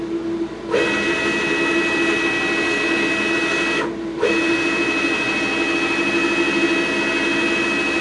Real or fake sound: real